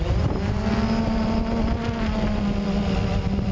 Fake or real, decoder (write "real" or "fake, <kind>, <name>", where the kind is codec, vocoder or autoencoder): real